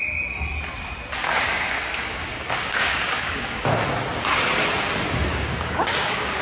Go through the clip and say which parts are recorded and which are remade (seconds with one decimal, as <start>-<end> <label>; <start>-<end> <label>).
0.0-1.2 recorded; 1.2-3.6 remade; 3.6-5.3 recorded; 5.3-6.4 remade